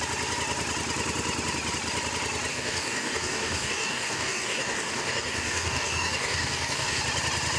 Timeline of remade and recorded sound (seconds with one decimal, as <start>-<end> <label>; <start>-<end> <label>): 0.0-2.5 recorded; 2.5-7.0 remade; 7.0-7.6 recorded